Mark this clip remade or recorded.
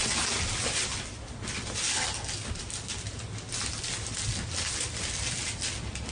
recorded